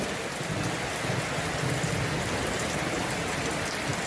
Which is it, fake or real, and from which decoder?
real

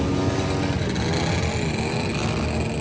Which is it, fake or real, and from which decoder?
real